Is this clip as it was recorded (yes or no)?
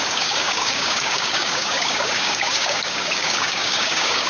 no